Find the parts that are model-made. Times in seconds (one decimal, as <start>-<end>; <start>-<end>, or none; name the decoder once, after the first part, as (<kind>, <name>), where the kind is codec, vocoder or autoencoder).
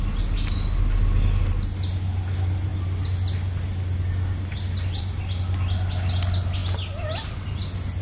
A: none